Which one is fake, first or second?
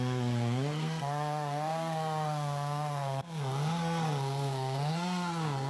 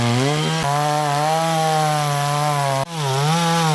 first